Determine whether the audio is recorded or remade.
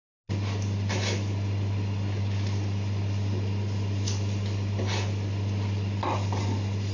recorded